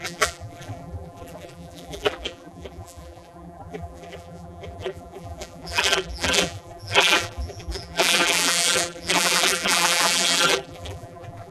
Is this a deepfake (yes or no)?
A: yes